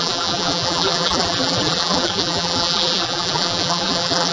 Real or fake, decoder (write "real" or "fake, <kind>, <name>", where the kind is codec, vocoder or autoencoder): fake, vocoder, BigVGAN v2